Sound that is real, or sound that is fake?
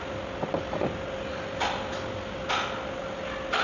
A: real